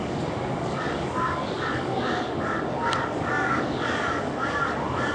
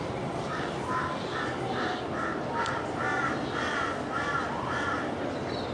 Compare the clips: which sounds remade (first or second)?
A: first